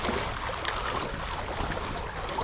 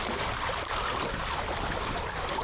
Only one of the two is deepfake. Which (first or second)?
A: second